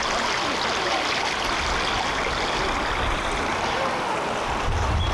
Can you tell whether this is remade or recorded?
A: recorded